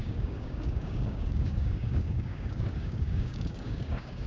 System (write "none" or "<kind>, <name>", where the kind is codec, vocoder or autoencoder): codec, DAC